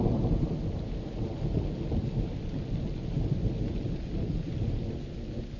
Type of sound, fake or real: real